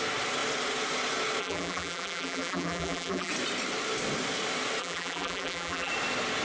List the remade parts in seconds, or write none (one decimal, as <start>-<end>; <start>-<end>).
1.4-3.3; 4.8-5.9